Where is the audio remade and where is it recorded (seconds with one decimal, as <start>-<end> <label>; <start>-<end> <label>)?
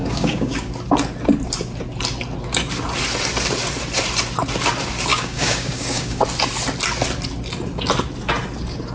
0.0-0.7 remade; 0.7-5.1 recorded; 5.1-6.2 remade; 6.2-8.9 recorded